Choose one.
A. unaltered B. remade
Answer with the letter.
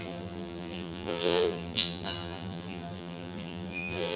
B